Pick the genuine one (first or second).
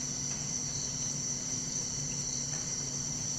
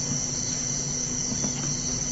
second